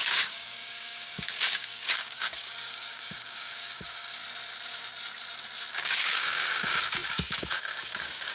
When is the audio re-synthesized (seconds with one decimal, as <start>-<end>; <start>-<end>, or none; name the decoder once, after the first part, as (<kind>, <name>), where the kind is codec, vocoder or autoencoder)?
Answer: 0.0-4.2 (codec, DAC); 5.7-8.3